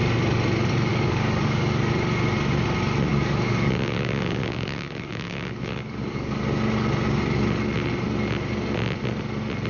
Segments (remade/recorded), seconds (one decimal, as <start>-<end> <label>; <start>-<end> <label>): 0.0-0.9 recorded; 0.9-1.9 remade; 1.9-3.1 recorded; 3.1-6.4 remade; 6.4-9.7 recorded